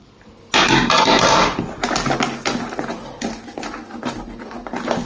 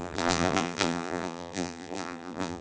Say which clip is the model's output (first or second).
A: second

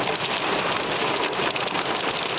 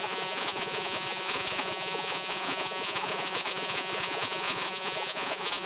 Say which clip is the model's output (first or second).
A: second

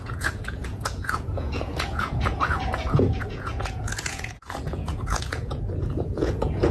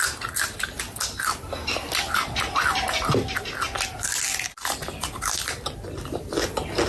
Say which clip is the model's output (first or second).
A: first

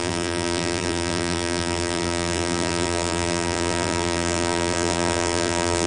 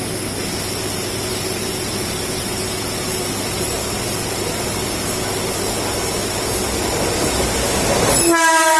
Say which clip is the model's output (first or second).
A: first